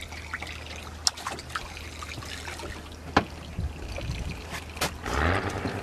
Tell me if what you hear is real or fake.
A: real